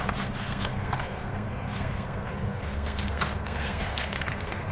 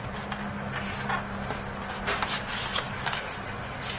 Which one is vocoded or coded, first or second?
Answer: first